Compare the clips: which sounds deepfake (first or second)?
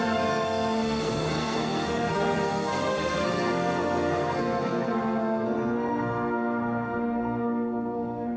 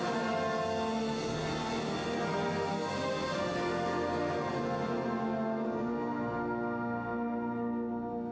first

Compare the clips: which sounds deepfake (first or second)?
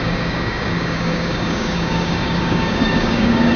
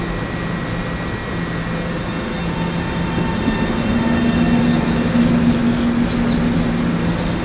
first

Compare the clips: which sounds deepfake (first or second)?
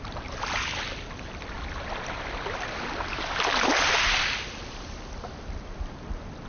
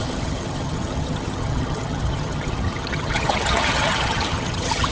second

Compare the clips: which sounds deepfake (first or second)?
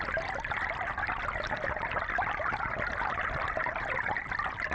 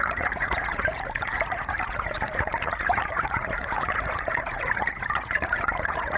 second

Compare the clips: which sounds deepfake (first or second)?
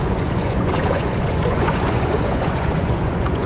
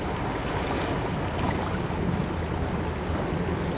first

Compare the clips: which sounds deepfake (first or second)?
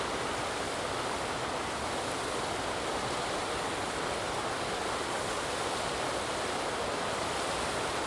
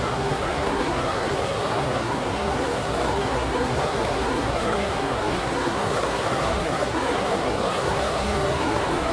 second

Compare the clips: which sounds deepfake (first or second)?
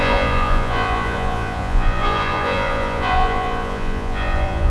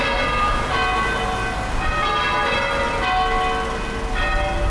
first